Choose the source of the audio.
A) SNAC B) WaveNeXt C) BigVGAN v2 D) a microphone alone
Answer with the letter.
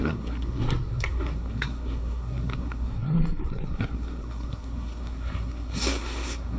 A